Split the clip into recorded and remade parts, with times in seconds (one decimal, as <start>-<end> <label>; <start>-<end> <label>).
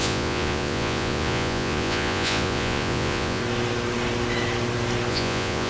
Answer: 0.0-3.4 remade; 3.4-5.1 recorded; 5.1-5.7 remade